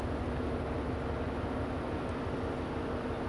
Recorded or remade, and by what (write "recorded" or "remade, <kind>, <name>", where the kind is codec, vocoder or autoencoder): recorded